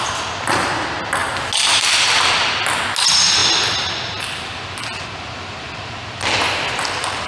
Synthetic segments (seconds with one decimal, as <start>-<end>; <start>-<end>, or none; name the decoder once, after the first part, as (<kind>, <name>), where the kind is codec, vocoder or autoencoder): none